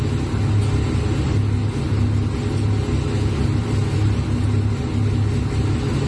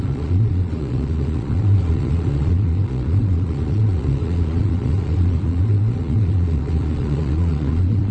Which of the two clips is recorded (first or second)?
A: first